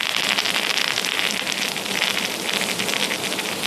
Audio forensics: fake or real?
real